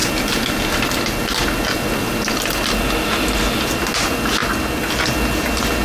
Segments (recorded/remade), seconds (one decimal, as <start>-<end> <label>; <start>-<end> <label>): 0.0-5.8 recorded